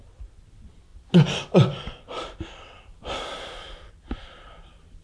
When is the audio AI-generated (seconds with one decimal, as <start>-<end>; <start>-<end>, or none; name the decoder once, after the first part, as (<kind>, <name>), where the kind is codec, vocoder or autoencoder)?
none

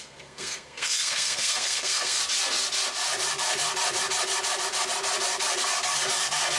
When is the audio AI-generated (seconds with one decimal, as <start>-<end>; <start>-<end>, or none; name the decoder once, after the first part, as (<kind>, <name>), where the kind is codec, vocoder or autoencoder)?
0.0-2.2 (codec, SNAC)

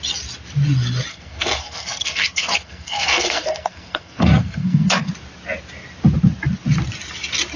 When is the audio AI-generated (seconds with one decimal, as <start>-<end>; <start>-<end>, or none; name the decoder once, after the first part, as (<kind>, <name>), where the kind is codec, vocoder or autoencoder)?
1.1-5.1 (codec, SNAC)